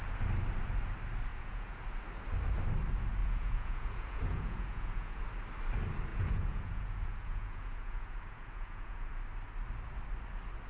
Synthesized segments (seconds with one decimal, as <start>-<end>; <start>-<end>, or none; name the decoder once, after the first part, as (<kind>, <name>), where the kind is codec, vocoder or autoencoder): 1.3-1.8 (vocoder, Vocos); 3.2-5.2; 6.1-9.2